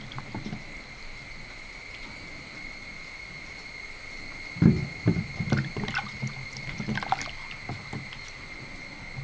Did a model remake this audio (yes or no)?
no